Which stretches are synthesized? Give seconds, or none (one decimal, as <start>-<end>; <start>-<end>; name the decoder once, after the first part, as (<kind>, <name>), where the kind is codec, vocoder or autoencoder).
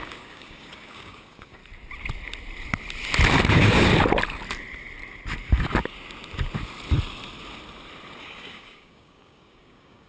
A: 0.0-1.6 (codec, DAC); 3.5-3.9; 8.2-10.1